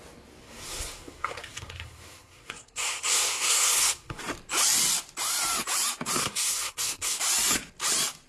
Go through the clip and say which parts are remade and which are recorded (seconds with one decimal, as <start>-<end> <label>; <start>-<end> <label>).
0.0-0.4 recorded; 0.4-4.2 remade; 4.2-6.2 recorded; 6.2-7.2 remade; 7.2-8.3 recorded